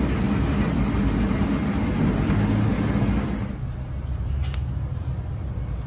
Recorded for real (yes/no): yes